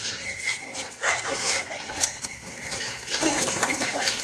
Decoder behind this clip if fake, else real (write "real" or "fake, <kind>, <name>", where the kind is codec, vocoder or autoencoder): fake, codec, SNAC